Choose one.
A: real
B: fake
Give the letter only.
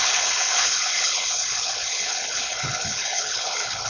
B